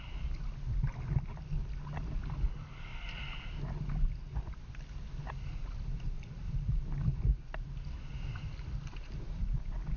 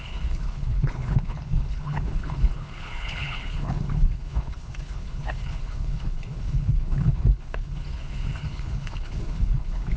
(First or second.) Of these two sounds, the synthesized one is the second